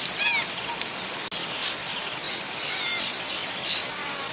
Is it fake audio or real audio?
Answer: real